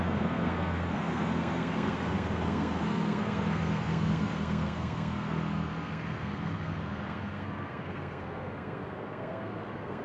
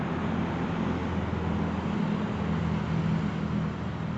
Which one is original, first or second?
second